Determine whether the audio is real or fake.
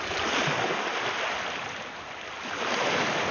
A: real